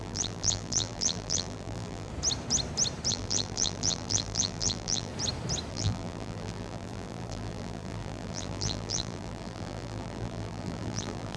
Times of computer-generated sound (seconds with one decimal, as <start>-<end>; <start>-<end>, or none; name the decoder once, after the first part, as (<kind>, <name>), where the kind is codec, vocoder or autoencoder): 0.0-2.1 (vocoder, BigVGAN v2); 3.1-5.1; 5.7-11.4